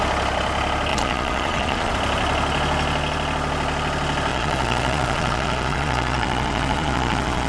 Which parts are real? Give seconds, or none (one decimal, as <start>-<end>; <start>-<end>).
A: 0.0-0.9; 1.9-4.3